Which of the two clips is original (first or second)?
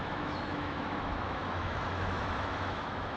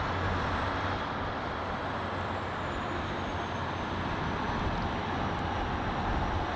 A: second